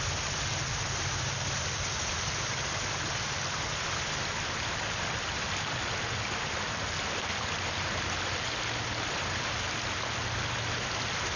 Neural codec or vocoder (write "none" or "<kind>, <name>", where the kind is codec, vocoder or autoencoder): none